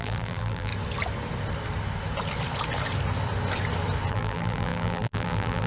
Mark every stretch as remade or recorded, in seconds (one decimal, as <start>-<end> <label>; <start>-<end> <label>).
0.0-0.7 remade; 0.7-4.1 recorded; 4.1-5.7 remade